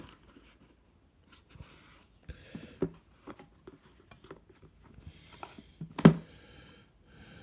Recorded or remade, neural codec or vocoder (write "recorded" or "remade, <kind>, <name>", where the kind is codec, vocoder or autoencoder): recorded